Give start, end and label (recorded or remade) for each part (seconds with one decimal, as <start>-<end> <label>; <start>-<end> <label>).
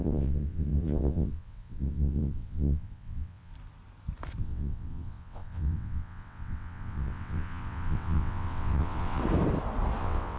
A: 0.0-3.5 remade; 3.5-4.4 recorded; 4.4-9.2 remade; 9.2-10.0 recorded; 10.0-10.4 remade